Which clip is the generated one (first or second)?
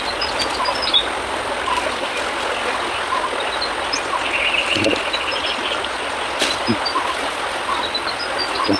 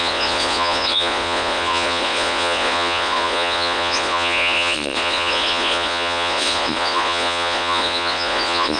second